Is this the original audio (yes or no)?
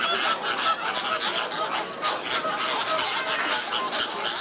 yes